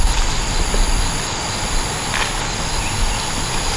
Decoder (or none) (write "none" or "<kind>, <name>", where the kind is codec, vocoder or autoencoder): none